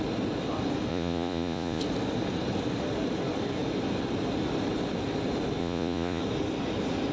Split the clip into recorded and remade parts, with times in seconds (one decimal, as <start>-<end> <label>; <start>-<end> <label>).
0.0-0.9 recorded; 0.9-1.8 remade; 1.8-5.6 recorded; 5.6-6.2 remade; 6.2-7.1 recorded